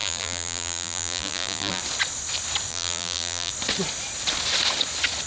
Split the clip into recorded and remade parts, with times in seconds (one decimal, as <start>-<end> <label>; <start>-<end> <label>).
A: 0.0-1.8 remade; 1.8-2.7 recorded; 2.7-3.5 remade; 3.5-5.3 recorded